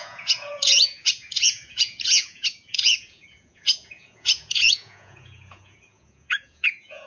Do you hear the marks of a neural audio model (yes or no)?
yes